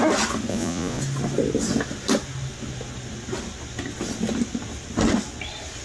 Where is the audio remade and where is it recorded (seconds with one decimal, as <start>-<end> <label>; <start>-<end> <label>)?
0.0-0.5 recorded; 0.5-1.0 remade; 1.0-5.8 recorded